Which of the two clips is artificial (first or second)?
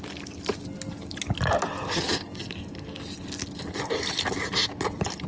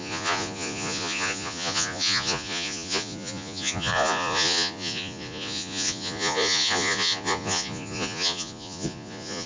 second